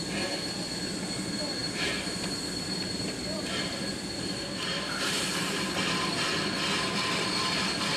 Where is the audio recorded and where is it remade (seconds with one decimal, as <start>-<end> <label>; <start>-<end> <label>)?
0.0-1.6 recorded; 1.6-5.3 remade; 5.3-8.0 recorded